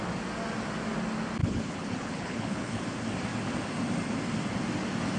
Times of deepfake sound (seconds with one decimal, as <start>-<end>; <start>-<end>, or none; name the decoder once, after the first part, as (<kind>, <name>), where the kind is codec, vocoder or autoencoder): 1.4-2.8 (codec, HILCodec)